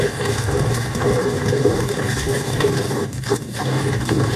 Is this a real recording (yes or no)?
no